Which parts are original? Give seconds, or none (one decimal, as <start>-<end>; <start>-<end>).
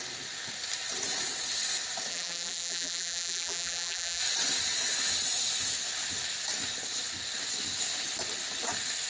0.0-2.1; 4.2-9.1